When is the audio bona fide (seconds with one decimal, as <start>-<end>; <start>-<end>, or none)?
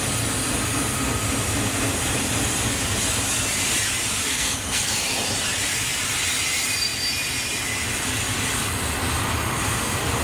0.0-4.3; 4.9-10.2